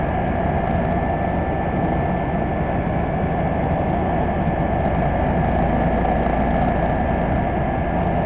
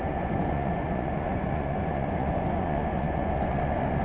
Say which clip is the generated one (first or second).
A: second